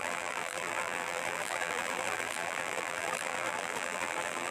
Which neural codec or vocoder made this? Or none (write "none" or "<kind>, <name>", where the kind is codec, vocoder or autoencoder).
vocoder, BigVGAN v2